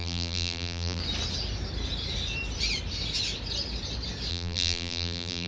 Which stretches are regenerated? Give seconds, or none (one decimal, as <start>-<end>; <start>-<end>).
0.0-1.0; 4.3-5.5